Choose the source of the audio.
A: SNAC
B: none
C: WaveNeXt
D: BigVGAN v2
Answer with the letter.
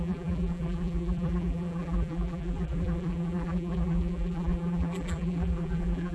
D